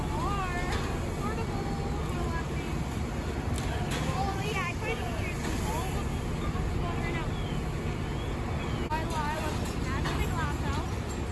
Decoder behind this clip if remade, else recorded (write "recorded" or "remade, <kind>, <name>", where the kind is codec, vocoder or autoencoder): recorded